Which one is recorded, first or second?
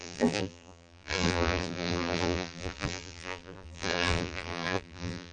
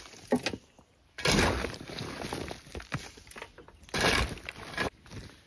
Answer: second